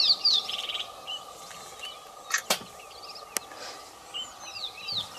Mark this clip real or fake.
real